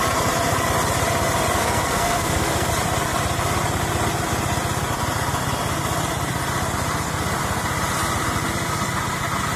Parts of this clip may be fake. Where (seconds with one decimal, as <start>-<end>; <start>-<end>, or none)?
1.6-2.7